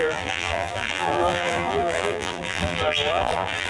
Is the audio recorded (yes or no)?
no